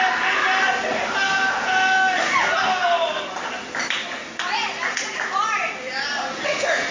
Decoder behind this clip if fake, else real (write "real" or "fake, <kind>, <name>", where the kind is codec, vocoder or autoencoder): real